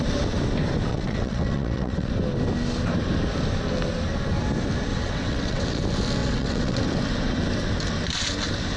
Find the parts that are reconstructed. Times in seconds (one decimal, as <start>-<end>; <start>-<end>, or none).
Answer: 0.9-2.1; 4.9-5.8; 6.2-6.8